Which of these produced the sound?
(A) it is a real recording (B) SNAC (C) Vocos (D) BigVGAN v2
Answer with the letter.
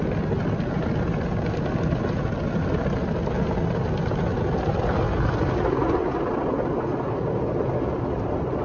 A